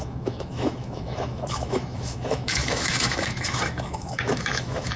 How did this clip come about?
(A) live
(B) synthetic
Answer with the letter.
B